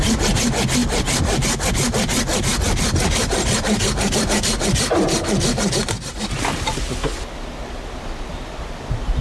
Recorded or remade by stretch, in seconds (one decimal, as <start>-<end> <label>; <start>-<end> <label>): 0.0-9.2 recorded